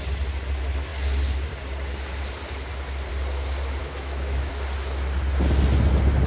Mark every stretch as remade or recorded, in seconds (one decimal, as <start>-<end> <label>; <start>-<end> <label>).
0.0-3.8 recorded; 3.8-4.5 remade; 4.5-6.3 recorded